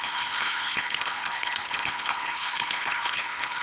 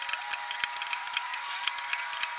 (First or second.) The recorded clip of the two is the second